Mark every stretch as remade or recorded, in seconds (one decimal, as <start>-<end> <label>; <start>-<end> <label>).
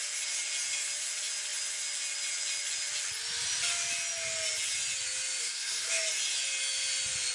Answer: 0.0-5.4 recorded; 5.4-5.9 remade; 5.9-7.3 recorded